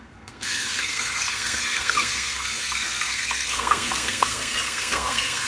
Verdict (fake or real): fake